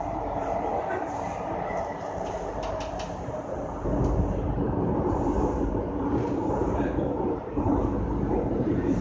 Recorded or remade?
remade